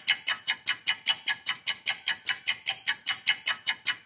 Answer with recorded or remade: recorded